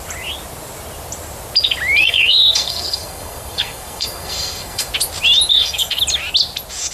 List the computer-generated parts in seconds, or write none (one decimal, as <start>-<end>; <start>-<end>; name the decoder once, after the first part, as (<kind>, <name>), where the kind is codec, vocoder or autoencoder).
2.0-4.9 (codec, SNAC); 5.5-6.0